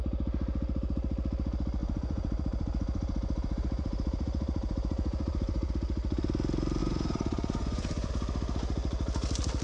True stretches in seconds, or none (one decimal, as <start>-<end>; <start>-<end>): 0.0-1.8; 5.7-6.8; 8.1-9.6